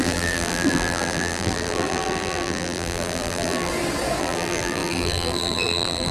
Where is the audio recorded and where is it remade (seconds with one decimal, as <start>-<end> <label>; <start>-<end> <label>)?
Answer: 0.0-3.7 remade; 3.7-4.2 recorded; 4.2-6.1 remade